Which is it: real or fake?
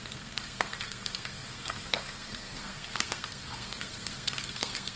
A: fake